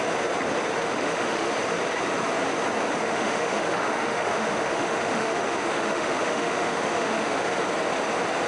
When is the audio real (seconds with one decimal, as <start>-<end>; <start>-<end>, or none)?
0.0-0.8; 1.5-3.0; 7.6-8.5